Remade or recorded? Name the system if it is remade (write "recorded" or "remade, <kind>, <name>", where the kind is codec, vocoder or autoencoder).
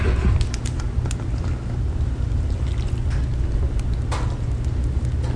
recorded